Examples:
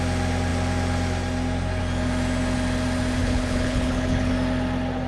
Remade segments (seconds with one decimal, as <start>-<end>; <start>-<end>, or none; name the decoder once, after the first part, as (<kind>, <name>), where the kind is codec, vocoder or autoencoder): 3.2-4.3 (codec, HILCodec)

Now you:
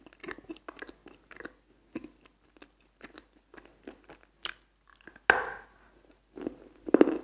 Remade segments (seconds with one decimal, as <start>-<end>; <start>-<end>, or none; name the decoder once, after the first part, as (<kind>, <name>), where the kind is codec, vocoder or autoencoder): none

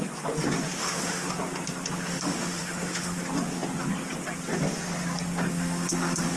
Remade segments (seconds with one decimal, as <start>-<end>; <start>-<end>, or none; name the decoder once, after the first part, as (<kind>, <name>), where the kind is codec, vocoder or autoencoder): 0.8-1.3 (autoencoder, DAC-VAE); 2.1-3.2; 5.5-6.4